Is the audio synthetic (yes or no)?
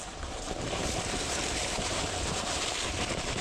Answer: yes